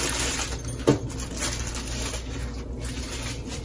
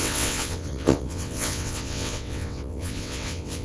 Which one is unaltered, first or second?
first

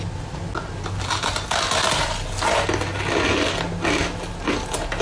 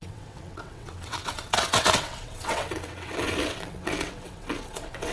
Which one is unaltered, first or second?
first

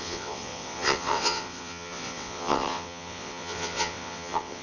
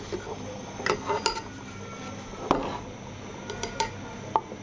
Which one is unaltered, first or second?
second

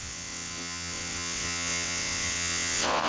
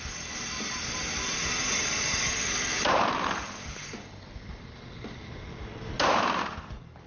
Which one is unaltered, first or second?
second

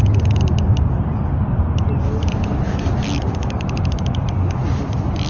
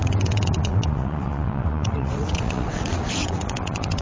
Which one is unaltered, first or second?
first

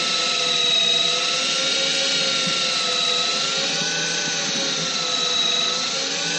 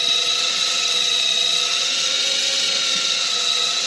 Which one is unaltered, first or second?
first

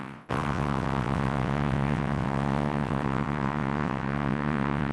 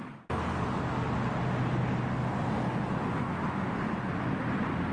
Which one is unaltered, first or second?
second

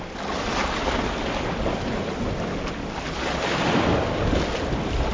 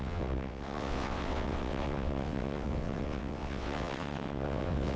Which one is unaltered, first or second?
first